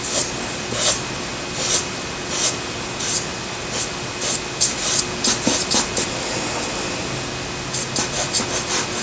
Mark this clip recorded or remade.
recorded